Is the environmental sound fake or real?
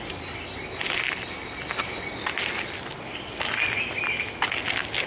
real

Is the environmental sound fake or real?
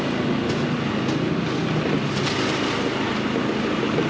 real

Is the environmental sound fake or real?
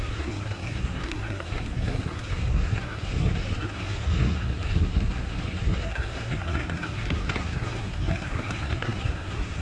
fake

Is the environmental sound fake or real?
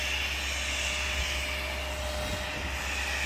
real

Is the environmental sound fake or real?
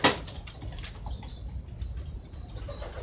real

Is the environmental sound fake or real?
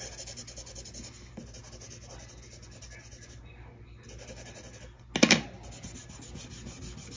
real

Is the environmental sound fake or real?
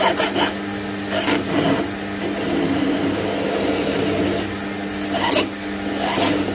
real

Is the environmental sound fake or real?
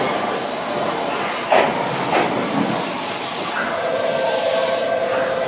real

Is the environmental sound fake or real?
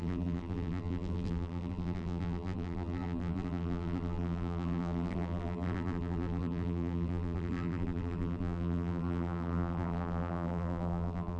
fake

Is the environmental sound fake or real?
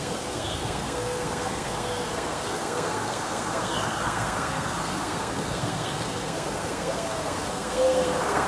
fake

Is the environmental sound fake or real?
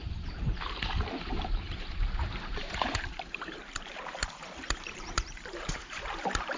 fake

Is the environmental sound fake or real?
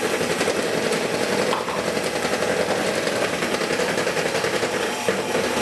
real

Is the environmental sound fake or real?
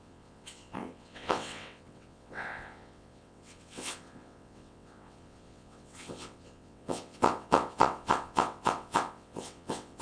fake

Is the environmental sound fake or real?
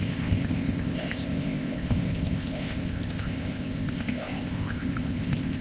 fake